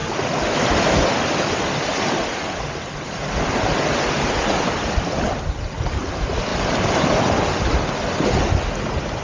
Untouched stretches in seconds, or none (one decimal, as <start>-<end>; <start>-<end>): 0.0-6.5; 7.2-9.2